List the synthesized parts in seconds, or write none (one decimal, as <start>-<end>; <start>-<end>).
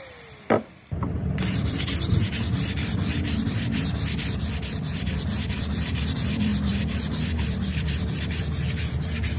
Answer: 0.0-9.4